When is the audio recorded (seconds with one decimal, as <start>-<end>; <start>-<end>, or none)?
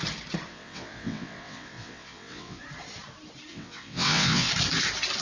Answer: 0.0-0.5; 2.6-3.5; 4.5-5.2